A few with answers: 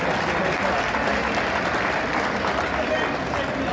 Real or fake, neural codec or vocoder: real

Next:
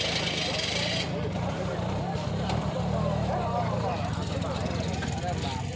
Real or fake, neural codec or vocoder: real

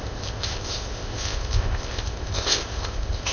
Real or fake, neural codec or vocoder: fake, codec, ZipCodec